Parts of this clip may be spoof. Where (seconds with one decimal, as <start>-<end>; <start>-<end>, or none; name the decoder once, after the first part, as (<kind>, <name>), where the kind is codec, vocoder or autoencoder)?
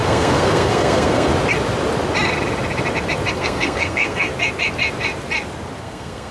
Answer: 0.0-1.3 (codec, SNAC); 3.3-4.3; 5.8-6.3